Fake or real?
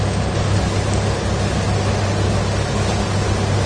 real